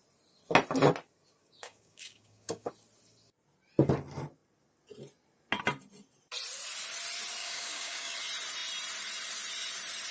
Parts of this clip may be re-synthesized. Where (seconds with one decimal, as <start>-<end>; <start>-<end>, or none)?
1.4-2.7; 7.4-8.2

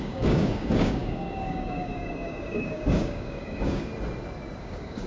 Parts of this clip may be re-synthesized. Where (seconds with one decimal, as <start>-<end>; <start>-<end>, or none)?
0.0-3.9; 4.6-5.1